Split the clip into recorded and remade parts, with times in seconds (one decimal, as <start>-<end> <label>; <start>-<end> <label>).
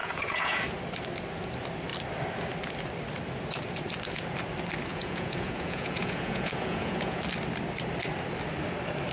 0.0-0.6 remade; 0.6-4.9 recorded; 4.9-7.2 remade; 7.2-9.1 recorded